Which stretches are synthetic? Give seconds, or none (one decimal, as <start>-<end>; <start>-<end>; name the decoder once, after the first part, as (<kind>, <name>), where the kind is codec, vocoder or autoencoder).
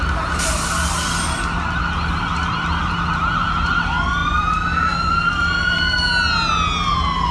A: none